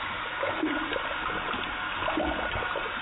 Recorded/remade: recorded